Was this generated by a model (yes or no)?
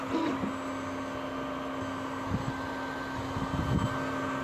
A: no